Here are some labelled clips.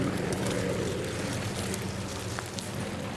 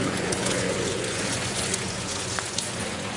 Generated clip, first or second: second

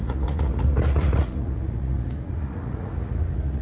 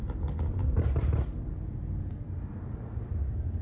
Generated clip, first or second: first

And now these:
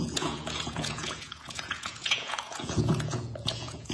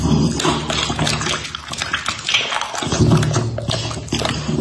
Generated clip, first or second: first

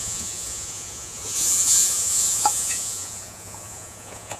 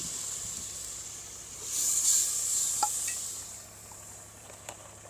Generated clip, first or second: first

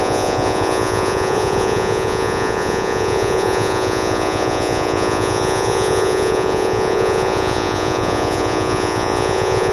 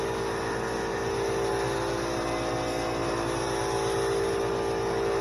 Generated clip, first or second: first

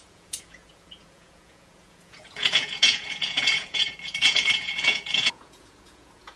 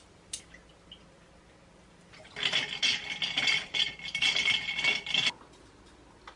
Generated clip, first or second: first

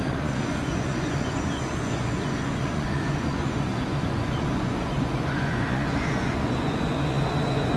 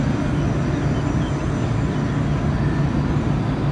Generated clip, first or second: first